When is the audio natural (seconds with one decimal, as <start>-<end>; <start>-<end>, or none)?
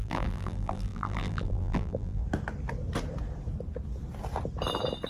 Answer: 2.2-5.1